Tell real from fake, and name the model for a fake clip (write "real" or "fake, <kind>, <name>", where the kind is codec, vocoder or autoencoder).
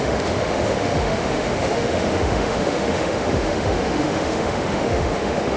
fake, autoencoder, DAC-VAE